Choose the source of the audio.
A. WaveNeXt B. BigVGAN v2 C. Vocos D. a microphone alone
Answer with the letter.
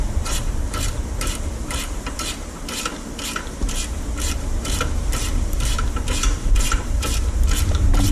B